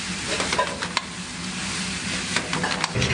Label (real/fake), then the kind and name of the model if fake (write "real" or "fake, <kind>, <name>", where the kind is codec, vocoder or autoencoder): real